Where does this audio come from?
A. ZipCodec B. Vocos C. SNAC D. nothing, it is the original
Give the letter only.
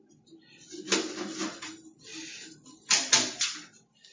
D